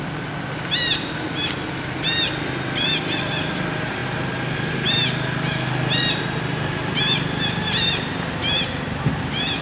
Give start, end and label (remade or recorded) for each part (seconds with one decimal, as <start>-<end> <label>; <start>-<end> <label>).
0.0-9.6 recorded